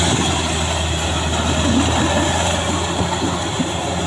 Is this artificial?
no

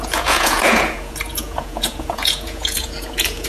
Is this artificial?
yes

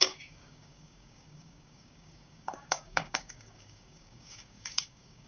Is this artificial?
yes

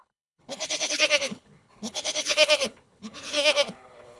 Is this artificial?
yes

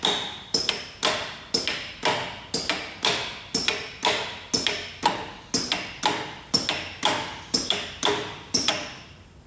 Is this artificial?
no